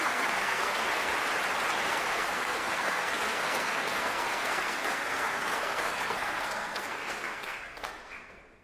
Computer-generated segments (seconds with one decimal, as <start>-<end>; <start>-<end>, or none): 0.0-1.1; 1.8-8.6